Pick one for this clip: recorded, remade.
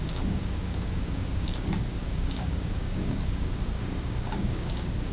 remade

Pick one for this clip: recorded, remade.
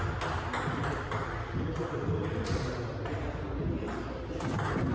recorded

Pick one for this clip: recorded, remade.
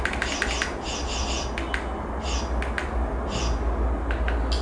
recorded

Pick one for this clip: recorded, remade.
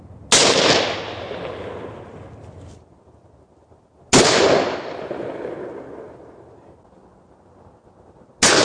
recorded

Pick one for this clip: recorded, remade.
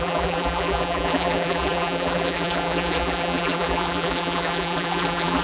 remade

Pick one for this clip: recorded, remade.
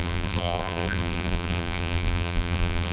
remade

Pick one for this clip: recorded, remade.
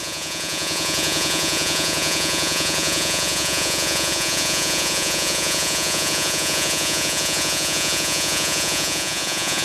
remade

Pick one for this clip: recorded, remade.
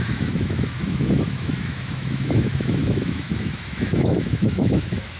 remade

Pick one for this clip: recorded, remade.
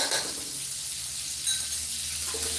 recorded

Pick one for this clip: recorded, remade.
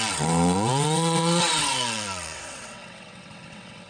remade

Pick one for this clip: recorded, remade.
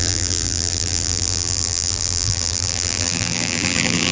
remade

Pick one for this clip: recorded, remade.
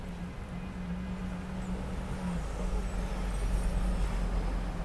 recorded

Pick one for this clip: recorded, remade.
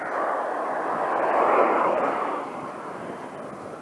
recorded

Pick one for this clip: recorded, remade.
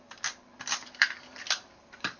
remade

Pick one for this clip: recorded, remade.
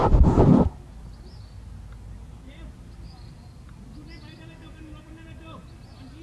recorded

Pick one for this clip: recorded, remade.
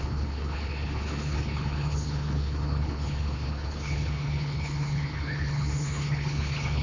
remade